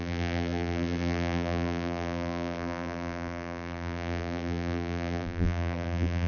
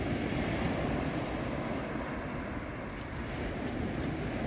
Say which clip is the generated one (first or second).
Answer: first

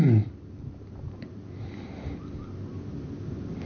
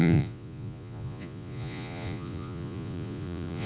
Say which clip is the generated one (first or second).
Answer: second